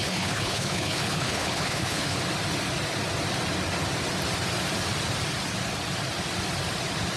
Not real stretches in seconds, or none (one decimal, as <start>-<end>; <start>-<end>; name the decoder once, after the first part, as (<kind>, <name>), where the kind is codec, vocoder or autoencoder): 0.0-2.2 (codec, HILCodec)